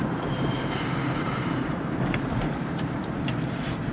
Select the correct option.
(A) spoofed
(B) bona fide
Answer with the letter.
A